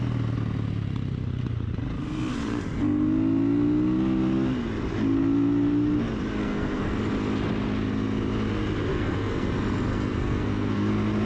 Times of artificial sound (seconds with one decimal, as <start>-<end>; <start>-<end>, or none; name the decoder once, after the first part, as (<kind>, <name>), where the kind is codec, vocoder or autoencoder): 6.4-7.0 (codec, SNAC); 8.9-9.5; 9.9-10.9